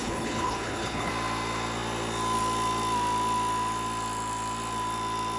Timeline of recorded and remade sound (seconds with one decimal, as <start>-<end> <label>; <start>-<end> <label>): 0.0-1.1 remade; 1.1-5.4 recorded